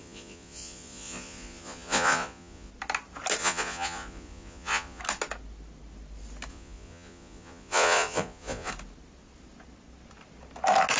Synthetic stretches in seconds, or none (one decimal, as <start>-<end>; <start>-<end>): 0.0-2.7; 3.4-5.0; 6.5-8.7